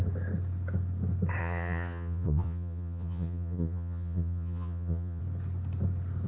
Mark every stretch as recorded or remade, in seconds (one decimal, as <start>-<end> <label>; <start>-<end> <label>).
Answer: 0.0-1.4 recorded; 1.4-5.2 remade; 5.2-6.3 recorded